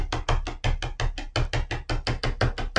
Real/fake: real